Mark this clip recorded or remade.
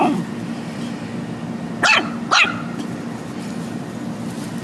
recorded